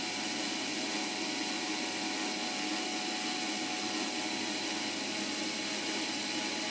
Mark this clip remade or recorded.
recorded